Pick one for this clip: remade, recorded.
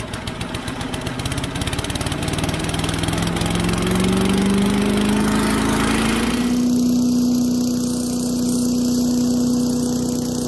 recorded